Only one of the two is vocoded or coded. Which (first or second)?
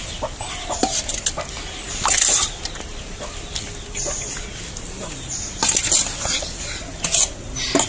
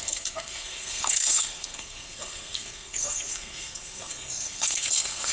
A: second